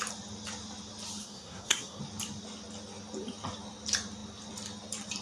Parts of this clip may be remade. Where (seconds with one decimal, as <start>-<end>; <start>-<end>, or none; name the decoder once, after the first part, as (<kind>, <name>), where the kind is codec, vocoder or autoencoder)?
1.2-2.0 (codec, SNAC)